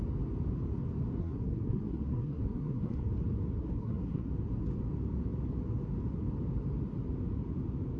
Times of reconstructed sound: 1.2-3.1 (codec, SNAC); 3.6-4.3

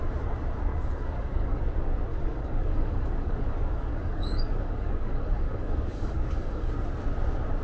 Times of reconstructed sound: 0.7-1.6 (codec, DAC); 2.1-6.7

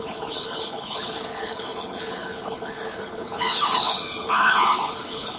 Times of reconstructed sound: 0.0-5.4 (codec, HILCodec)

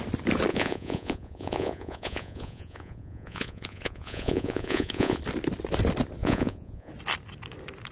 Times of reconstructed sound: 0.5-5.2 (vocoder, Vocos); 6.2-6.9

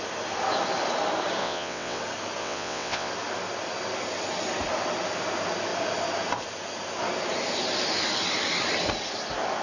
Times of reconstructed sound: 1.4-2.0 (vocoder, WaveNeXt); 2.4-3.1

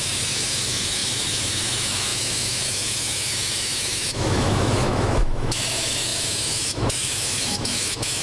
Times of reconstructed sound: 0.0-8.2 (autoencoder, DAC-VAE)